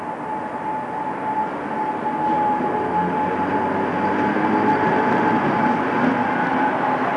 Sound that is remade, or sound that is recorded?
recorded